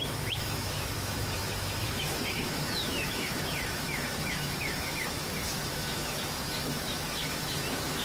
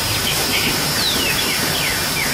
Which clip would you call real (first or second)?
second